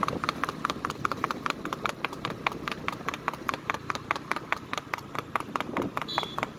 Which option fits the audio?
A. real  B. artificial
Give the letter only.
B